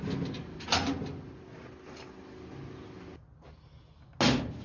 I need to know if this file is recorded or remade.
recorded